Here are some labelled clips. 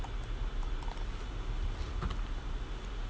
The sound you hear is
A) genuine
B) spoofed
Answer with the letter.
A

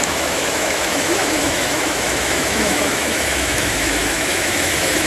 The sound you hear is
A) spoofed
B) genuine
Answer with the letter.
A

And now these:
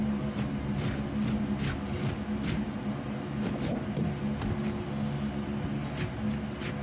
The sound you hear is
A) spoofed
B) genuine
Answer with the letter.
B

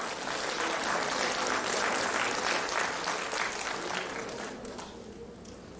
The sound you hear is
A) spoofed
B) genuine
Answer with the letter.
B